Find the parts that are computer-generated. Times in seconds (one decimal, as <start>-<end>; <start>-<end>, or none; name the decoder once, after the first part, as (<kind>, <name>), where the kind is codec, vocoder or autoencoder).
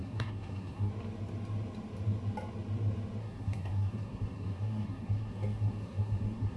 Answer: 0.0-0.9 (codec, SNAC); 3.2-6.6